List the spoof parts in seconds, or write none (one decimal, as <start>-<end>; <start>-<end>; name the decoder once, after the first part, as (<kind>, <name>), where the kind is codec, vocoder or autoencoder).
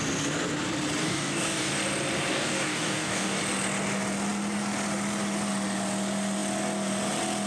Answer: 1.0-1.7 (codec, DAC); 2.3-3.4